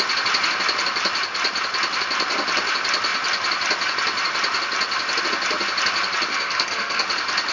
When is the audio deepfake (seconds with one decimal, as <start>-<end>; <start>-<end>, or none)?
6.3-7.0